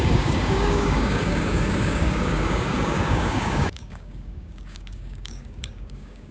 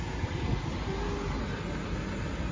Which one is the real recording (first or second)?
second